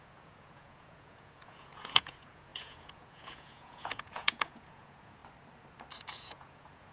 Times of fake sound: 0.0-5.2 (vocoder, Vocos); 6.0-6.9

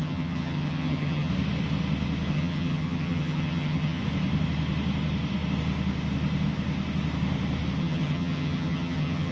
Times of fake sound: 0.0-1.3 (vocoder, HiFi-GAN); 2.3-4.0; 7.8-9.3

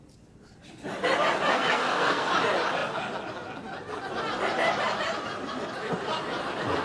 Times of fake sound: 1.5-2.3 (codec, SNAC)

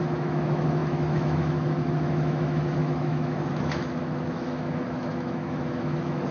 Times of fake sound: 0.0-6.3 (autoencoder, DAC-VAE)